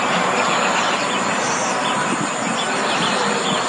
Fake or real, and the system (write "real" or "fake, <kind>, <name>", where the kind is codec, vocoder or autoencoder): real